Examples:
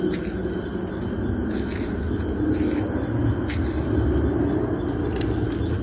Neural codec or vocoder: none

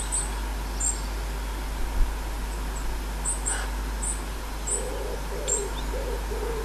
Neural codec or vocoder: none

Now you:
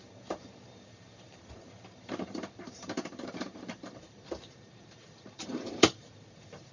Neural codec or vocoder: vocoder, BigVGAN v2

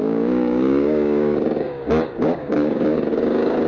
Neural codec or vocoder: codec, DAC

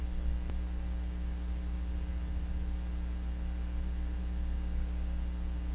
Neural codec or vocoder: none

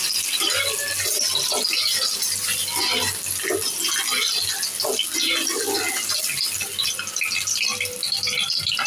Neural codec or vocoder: none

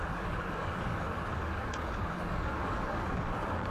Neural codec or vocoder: codec, DAC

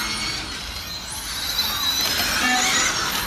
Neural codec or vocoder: none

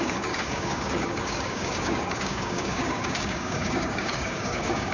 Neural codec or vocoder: codec, DAC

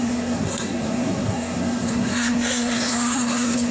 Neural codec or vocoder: codec, SNAC